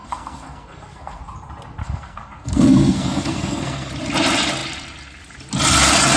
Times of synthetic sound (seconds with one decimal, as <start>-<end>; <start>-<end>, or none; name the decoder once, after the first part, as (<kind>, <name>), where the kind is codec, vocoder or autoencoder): 0.0-1.2 (codec, SNAC); 1.8-3.9